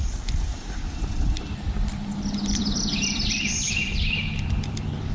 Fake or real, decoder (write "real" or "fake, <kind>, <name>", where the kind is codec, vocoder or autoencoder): fake, vocoder, BigVGAN v2